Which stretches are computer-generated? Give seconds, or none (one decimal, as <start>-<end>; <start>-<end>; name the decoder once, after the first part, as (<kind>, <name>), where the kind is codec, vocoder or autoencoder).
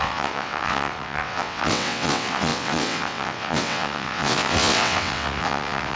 0.0-6.0 (vocoder, WaveNeXt)